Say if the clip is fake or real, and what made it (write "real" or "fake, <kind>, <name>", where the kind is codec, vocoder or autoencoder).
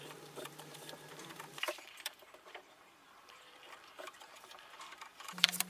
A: fake, vocoder, BigVGAN v2